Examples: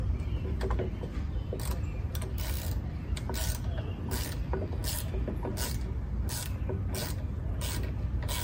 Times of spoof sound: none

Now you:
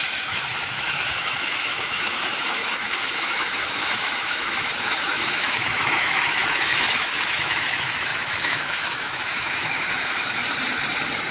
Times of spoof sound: 0.0-10.4

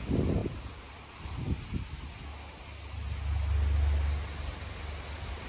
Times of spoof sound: none

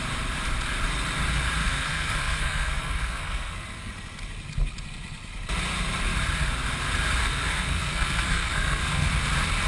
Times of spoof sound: 1.6-3.9; 7.2-9.1

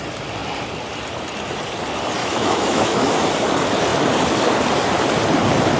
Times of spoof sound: 2.2-3.3

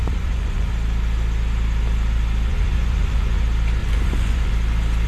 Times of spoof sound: 0.0-0.7; 2.5-3.4; 3.8-4.5